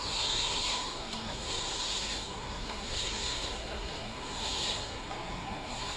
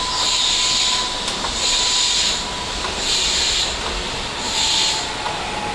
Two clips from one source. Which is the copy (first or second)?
first